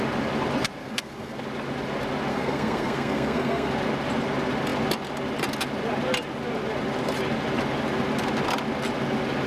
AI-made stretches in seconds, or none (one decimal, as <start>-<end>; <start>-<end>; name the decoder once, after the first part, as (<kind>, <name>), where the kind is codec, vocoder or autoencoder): 0.8-1.4 (codec, SNAC); 2.3-3.7